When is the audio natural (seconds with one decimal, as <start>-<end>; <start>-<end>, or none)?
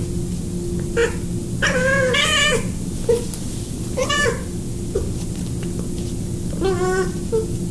0.0-7.7